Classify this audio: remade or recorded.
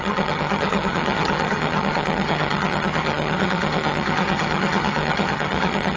remade